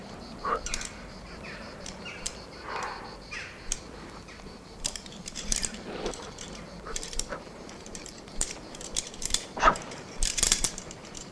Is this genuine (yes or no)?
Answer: no